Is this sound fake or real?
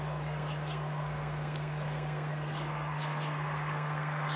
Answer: fake